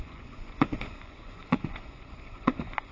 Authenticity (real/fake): fake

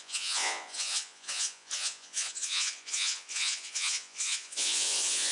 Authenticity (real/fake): fake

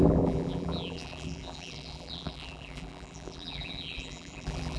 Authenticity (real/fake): fake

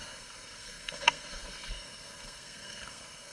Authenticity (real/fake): fake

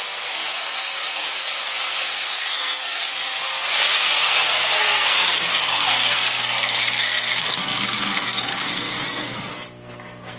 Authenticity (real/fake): fake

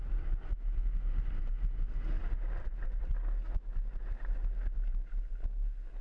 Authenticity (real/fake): real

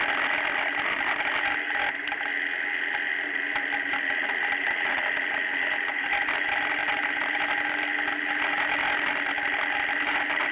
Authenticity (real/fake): real